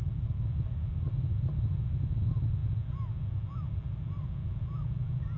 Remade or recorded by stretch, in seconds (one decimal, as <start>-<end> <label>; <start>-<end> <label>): 0.0-5.4 recorded